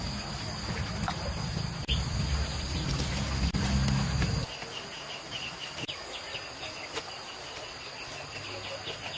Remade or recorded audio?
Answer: recorded